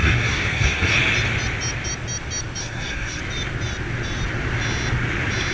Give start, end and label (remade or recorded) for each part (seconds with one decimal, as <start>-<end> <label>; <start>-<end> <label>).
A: 0.0-0.9 remade; 0.9-2.6 recorded; 2.6-3.2 remade; 3.2-5.5 recorded